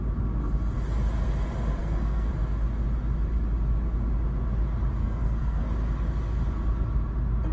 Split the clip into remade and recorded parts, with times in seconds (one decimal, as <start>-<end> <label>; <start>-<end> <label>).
0.0-1.8 recorded; 1.8-2.3 remade; 2.3-5.0 recorded; 5.0-5.7 remade; 5.7-7.5 recorded